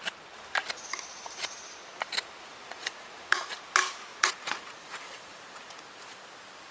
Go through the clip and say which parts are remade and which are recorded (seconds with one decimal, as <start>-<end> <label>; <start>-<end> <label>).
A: 0.0-2.6 recorded; 2.6-3.6 remade; 3.6-4.1 recorded; 4.1-5.8 remade; 5.8-6.7 recorded